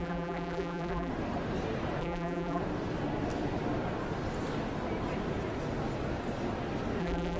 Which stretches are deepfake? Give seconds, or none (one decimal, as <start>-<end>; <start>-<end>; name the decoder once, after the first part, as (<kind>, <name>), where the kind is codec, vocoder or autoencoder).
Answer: 0.0-1.1 (vocoder, BigVGAN v2); 2.0-2.6; 7.0-7.4